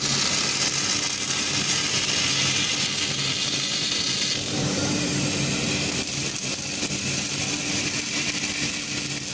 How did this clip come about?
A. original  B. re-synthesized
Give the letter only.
A